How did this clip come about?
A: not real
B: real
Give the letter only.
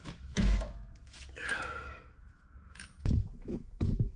A